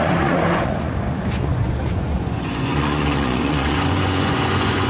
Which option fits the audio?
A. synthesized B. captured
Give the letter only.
A